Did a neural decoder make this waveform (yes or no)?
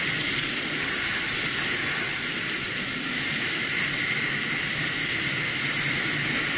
no